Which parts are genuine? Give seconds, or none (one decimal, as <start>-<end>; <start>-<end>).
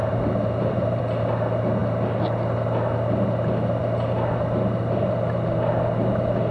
1.0-6.5